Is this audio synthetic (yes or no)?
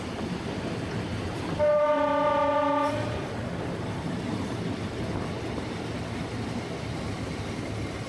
no